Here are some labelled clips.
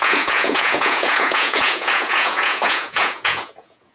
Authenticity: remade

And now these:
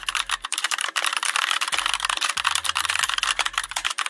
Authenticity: remade